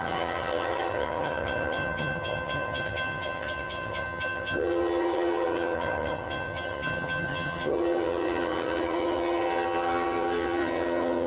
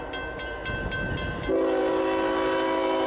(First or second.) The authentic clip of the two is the second